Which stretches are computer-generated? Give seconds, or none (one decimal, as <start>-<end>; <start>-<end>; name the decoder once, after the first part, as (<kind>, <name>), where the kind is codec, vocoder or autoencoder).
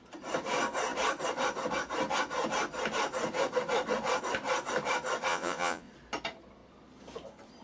5.3-5.9 (vocoder, Vocos)